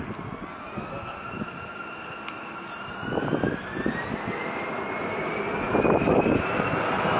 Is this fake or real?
real